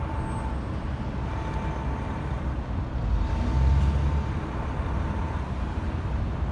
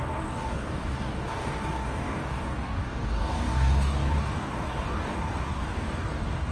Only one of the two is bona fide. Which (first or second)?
first